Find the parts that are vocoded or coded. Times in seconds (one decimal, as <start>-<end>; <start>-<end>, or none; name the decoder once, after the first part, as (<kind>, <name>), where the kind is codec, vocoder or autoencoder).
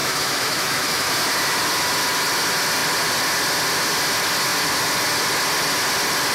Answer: 0.0-1.1 (autoencoder, DAC-VAE)